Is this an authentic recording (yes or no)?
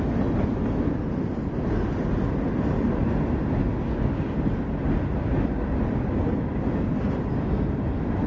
yes